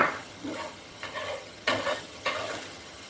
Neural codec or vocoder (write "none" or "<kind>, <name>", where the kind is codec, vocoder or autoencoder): vocoder, HiFi-GAN